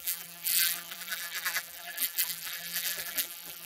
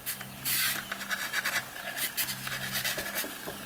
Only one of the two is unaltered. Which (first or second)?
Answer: second